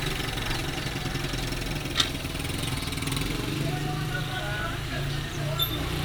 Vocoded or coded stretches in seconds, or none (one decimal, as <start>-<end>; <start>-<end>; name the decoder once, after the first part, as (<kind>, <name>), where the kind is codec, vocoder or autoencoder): none

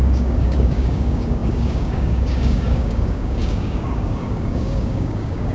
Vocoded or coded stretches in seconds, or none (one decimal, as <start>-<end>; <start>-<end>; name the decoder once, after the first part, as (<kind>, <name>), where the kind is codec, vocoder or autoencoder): 0.0-5.5 (codec, DAC)

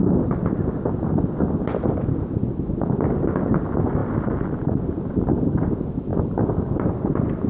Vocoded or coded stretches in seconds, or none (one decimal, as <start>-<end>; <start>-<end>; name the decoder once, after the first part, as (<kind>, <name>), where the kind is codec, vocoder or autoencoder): none

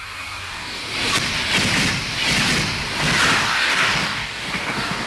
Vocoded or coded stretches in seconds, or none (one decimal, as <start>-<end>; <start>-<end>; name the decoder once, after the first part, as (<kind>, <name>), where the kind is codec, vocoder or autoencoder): 0.0-0.8 (codec, DAC); 3.4-5.1

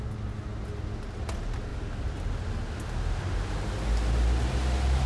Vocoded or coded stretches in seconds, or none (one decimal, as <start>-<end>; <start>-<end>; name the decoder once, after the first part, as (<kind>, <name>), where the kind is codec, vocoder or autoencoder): none

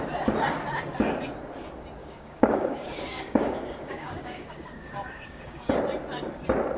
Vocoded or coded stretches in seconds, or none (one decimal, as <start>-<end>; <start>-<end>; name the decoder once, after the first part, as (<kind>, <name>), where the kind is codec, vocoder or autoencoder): 2.0-5.7 (codec, DAC)

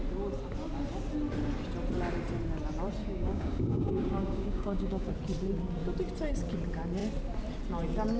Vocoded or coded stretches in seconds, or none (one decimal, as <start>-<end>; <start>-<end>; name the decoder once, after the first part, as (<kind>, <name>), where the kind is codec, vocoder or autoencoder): 3.0-5.1 (codec, DAC)

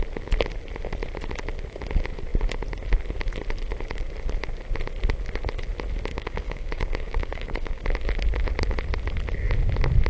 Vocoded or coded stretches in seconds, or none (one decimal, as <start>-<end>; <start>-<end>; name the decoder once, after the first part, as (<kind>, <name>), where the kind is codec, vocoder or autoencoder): 6.1-7.8 (codec, DAC)